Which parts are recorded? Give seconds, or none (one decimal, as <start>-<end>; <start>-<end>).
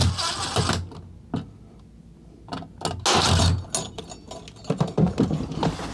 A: 0.0-5.9